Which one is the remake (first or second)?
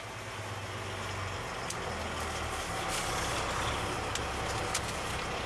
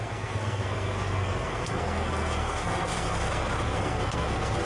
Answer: second